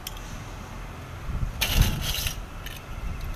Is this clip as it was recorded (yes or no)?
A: yes